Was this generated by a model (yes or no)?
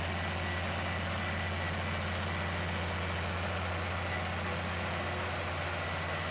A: no